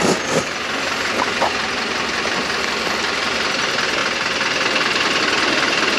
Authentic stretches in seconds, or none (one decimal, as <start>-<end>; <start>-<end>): 0.0-4.0; 5.2-6.0